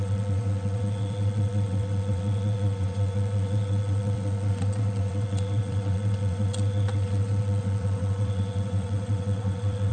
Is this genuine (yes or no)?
no